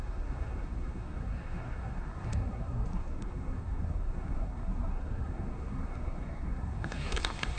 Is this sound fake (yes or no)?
yes